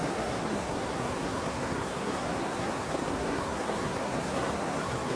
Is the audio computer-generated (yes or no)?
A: yes